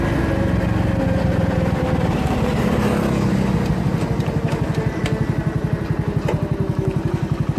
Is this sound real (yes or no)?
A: yes